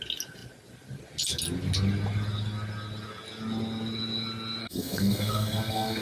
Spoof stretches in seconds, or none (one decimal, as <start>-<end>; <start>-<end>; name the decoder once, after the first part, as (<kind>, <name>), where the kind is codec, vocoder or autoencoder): 4.6-6.0 (codec, SNAC)